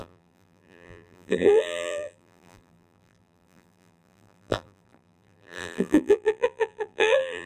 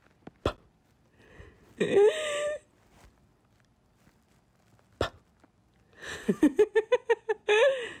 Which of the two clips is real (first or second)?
second